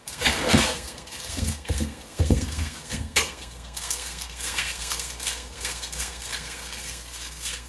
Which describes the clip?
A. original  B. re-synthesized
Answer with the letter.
B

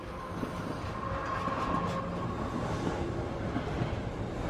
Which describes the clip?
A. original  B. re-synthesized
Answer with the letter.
A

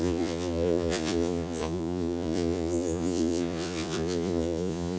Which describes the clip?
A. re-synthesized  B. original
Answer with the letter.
A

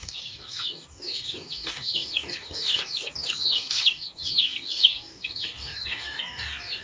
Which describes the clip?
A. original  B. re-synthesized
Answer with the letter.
B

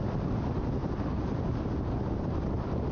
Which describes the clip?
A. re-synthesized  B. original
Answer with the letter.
B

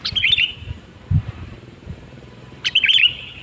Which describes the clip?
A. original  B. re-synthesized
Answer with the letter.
B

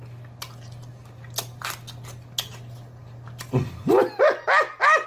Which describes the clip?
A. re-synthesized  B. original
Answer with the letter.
B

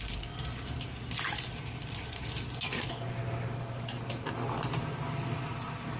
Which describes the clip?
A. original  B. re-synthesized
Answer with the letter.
A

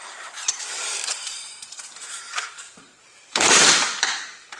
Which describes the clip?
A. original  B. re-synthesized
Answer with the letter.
B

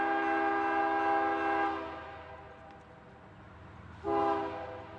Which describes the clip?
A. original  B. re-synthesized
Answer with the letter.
A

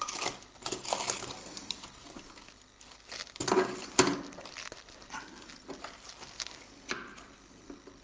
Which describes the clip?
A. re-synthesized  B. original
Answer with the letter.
B